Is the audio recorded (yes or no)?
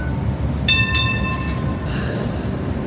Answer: yes